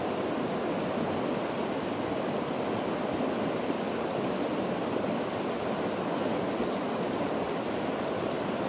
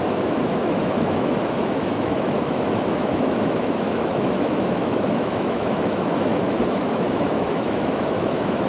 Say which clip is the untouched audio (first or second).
first